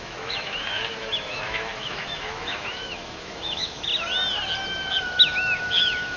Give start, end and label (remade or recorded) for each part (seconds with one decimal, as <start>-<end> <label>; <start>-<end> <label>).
0.0-3.9 remade; 3.9-5.0 recorded; 5.0-6.2 remade

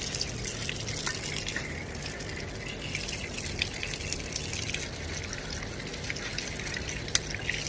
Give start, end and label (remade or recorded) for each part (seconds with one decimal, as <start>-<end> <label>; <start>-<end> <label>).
0.0-7.7 recorded

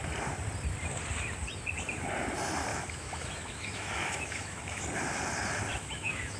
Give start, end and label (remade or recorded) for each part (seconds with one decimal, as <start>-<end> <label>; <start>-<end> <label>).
0.0-2.7 recorded; 2.7-4.8 remade; 4.8-5.7 recorded; 5.7-6.4 remade

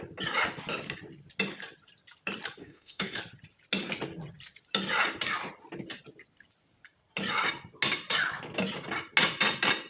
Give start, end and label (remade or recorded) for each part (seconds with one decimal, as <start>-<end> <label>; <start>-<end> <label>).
0.0-2.6 recorded; 2.6-3.2 remade; 3.2-9.9 recorded

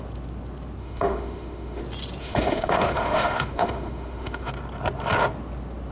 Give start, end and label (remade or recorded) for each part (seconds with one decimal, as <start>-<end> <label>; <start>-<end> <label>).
0.0-0.8 recorded; 0.8-1.8 remade; 1.8-2.2 recorded; 2.2-4.5 remade; 4.5-5.9 recorded

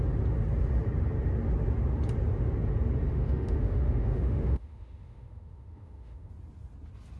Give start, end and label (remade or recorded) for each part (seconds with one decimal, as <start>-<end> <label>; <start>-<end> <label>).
0.0-3.1 recorded; 3.1-6.3 remade; 6.3-7.2 recorded